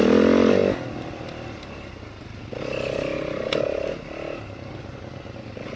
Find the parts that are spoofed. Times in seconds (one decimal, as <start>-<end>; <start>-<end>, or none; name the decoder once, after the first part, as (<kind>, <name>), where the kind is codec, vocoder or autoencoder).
none